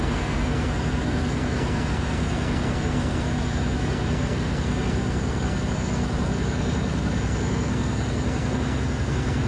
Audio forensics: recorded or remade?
remade